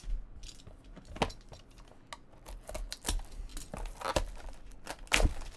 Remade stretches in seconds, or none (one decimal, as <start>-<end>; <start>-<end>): none

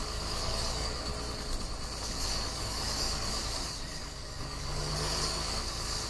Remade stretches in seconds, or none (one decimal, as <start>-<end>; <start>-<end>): 0.0-1.1; 2.0-6.1

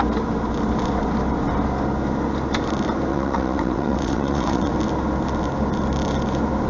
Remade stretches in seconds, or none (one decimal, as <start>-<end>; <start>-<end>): 3.1-4.7